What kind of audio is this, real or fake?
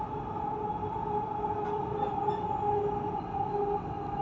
real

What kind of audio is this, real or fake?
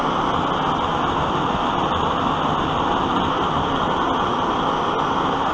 real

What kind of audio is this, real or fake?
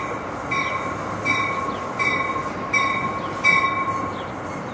real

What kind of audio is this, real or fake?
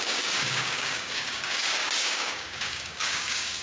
fake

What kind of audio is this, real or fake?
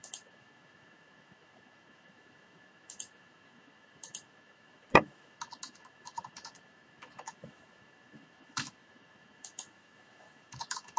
fake